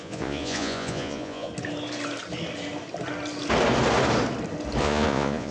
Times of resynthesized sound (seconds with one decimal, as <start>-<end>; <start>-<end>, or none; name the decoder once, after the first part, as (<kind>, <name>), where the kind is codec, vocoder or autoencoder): 0.0-1.5 (vocoder, Vocos); 4.8-5.5